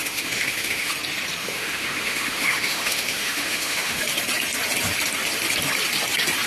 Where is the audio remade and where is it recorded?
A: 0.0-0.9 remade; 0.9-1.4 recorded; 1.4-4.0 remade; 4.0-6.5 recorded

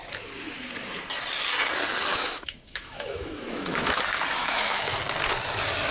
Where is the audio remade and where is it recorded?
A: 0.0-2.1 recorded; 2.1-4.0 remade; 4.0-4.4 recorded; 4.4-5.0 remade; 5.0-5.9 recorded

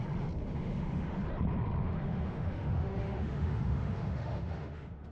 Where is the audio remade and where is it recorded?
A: 0.0-0.4 recorded; 0.4-1.2 remade; 1.2-1.8 recorded; 1.8-5.1 remade

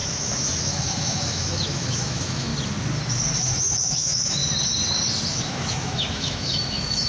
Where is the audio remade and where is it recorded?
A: 0.0-2.5 remade; 2.5-3.4 recorded; 3.4-4.4 remade; 4.4-5.3 recorded; 5.3-7.1 remade

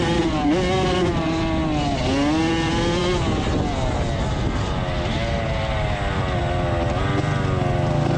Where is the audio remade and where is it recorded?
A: 0.0-8.2 recorded

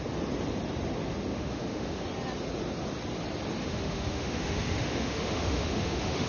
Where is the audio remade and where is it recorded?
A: 0.0-1.3 recorded; 1.3-2.0 remade; 2.0-3.6 recorded; 3.6-6.3 remade

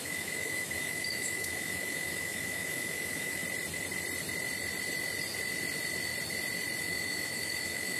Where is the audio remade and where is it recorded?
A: 0.0-3.4 remade; 3.4-6.8 recorded; 6.8-8.0 remade

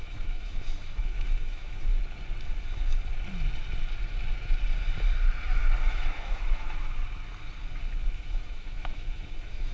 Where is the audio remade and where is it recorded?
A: 0.0-1.9 remade; 1.9-5.9 recorded; 5.9-7.0 remade; 7.0-8.1 recorded; 8.1-9.7 remade